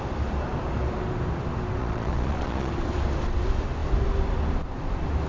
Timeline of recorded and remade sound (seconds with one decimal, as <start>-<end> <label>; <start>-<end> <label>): 0.0-1.8 recorded; 1.8-2.7 remade; 2.7-5.3 recorded